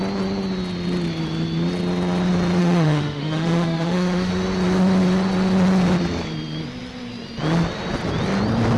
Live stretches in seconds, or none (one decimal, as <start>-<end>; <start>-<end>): 0.0-2.6; 4.3-8.8